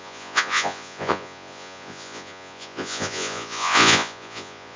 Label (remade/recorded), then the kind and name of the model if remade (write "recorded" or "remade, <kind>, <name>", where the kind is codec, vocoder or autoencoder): remade, vocoder, Vocos